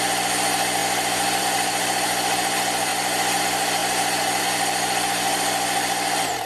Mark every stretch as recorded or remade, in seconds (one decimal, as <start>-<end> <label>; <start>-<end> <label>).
0.0-2.9 remade; 2.9-3.4 recorded; 3.4-6.5 remade